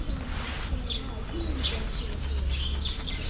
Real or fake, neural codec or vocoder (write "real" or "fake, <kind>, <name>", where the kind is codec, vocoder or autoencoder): real